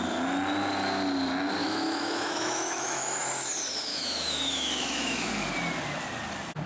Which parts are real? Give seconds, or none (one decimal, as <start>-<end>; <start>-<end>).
0.0-1.6; 3.2-3.9; 5.3-6.7